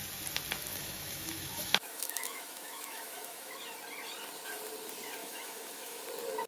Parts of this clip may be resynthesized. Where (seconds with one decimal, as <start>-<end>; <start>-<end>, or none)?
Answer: 0.7-3.5; 5.2-6.0